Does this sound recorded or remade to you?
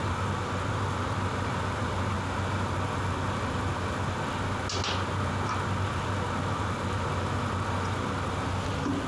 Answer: recorded